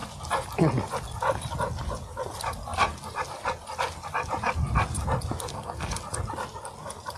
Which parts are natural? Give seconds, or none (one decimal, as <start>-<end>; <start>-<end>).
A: 0.0-5.5; 6.0-7.2